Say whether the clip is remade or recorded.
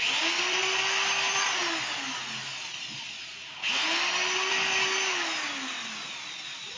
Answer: recorded